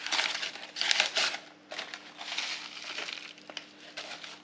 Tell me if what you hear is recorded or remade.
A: recorded